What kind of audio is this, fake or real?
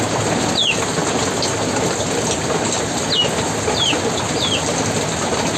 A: real